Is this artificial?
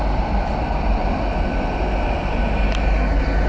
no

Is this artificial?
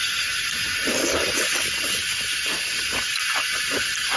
no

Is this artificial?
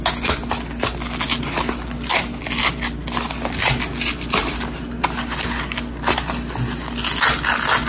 no